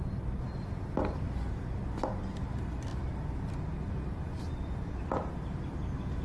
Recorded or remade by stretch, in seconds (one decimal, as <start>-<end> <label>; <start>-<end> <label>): 0.0-6.2 recorded